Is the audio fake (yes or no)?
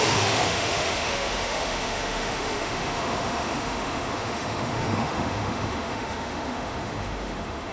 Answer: yes